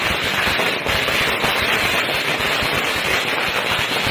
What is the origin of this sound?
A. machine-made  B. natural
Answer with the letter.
B